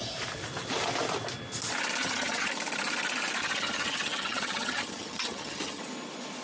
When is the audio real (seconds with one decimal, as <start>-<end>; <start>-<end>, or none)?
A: 0.0-2.0; 2.5-3.4; 5.8-6.4